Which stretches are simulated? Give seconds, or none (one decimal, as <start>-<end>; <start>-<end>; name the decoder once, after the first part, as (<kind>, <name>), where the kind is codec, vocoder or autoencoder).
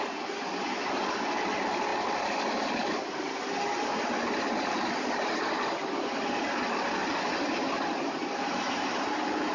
1.9-6.4 (vocoder, BigVGAN v2)